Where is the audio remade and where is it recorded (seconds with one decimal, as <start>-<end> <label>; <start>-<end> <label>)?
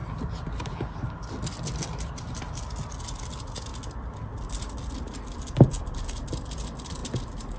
0.0-7.6 recorded